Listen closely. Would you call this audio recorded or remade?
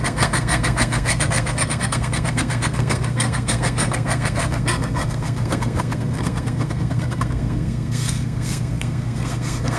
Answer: remade